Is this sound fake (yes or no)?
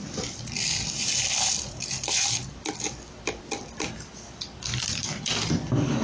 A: yes